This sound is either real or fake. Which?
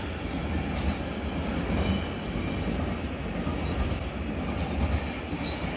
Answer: real